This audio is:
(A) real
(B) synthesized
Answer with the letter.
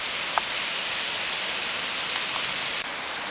B